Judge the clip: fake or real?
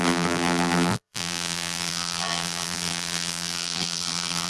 fake